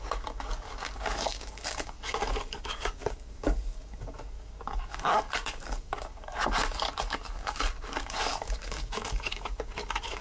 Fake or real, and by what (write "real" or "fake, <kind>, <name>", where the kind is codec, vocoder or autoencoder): fake, codec, DAC